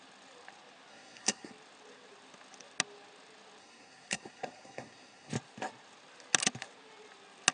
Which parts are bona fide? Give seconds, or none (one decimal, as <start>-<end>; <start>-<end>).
0.0-0.9; 1.5-3.6; 5.3-7.5